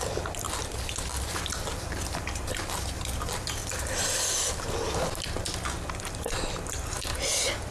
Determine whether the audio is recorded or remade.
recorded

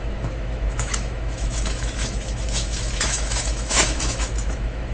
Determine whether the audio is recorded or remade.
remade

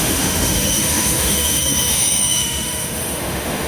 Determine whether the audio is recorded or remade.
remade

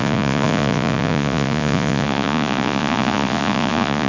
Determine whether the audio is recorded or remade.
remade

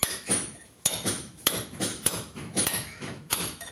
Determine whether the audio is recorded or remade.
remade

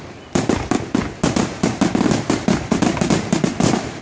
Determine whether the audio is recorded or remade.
recorded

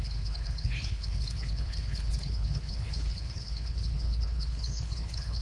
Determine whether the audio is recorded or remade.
remade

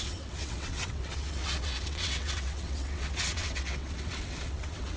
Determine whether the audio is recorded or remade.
remade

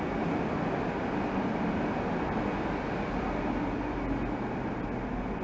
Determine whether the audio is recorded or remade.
recorded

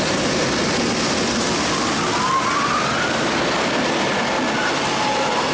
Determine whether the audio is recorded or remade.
recorded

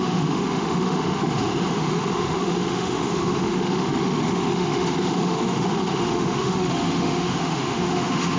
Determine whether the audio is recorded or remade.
remade